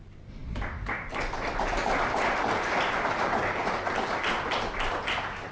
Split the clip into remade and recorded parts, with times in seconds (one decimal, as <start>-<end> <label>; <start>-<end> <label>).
0.0-5.5 recorded